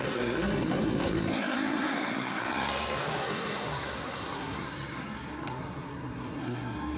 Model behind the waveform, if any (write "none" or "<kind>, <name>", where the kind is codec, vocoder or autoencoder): codec, SNAC